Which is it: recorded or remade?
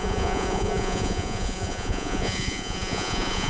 remade